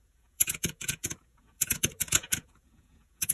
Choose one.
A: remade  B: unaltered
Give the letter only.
A